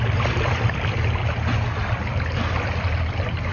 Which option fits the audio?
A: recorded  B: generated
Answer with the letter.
A